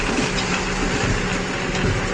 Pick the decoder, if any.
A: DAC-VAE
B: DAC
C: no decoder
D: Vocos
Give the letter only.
C